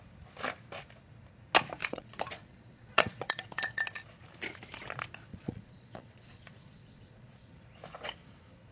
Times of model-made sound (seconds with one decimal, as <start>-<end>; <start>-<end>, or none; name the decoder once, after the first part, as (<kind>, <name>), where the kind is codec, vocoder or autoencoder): 1.8-3.8 (vocoder, Vocos); 5.3-7.5